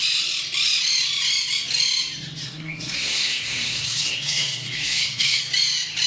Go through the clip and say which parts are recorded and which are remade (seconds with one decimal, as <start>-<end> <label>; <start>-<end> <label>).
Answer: 0.0-2.4 recorded; 2.4-5.4 remade; 5.4-6.1 recorded